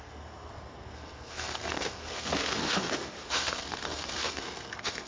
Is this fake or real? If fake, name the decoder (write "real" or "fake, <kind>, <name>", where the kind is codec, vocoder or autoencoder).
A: fake, codec, SNAC